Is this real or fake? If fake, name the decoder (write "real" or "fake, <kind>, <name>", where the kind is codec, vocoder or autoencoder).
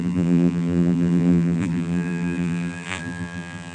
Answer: fake, vocoder, BigVGAN v2